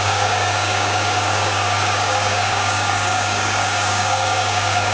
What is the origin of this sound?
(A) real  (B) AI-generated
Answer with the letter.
B